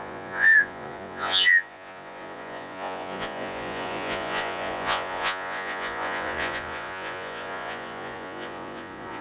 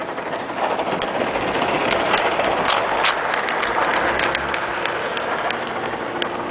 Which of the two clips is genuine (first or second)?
second